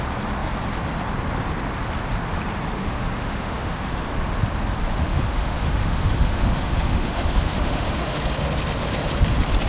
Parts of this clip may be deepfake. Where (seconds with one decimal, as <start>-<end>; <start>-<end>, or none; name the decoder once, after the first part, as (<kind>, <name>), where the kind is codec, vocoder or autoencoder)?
2.8-4.1 (autoencoder, DAC-VAE); 5.1-8.2